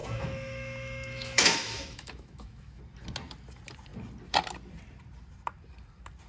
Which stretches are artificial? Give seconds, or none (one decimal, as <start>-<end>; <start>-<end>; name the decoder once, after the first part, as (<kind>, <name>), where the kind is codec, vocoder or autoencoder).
0.0-2.8 (autoencoder, DAC-VAE)